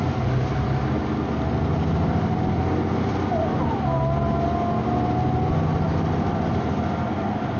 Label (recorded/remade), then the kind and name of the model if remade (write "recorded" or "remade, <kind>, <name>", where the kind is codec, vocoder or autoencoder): recorded